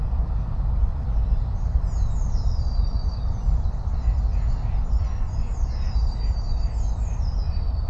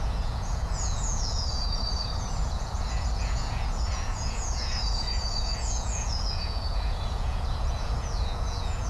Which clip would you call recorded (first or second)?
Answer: first